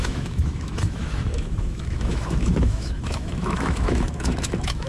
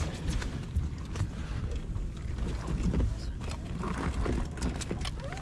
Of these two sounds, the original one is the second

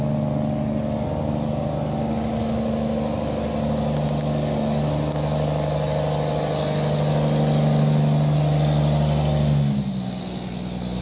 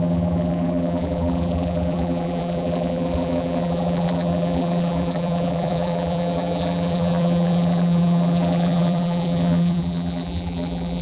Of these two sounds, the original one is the first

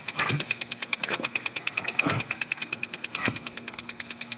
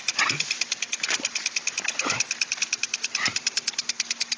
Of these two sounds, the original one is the second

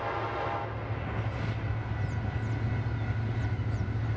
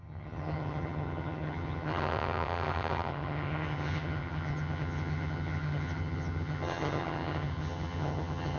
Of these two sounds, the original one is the first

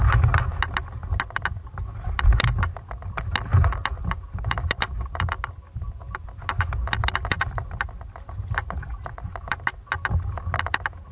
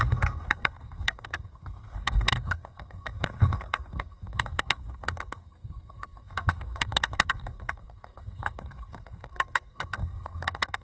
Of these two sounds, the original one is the first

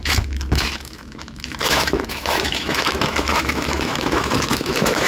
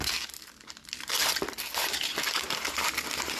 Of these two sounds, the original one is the second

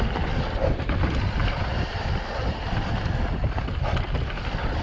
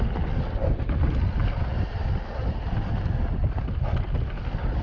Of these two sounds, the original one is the second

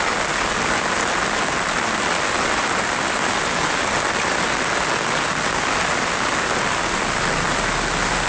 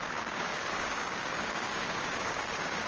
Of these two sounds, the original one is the first